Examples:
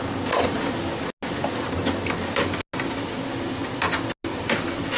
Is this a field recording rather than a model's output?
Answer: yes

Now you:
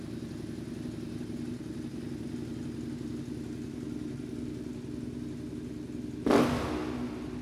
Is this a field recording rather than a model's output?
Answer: yes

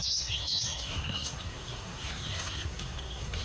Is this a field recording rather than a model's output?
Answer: no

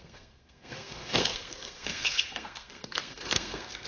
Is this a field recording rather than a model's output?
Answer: no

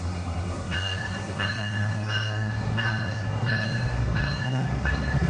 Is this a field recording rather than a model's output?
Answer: no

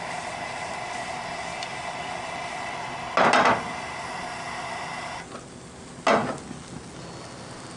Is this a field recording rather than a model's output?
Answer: yes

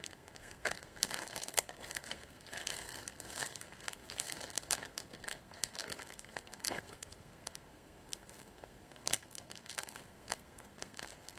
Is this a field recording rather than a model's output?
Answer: no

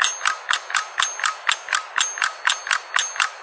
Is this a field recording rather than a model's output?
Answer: yes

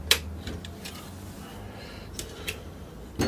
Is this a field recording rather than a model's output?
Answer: yes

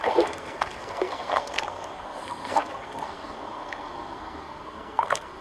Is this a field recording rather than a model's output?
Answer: no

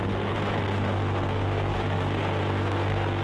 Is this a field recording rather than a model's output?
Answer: no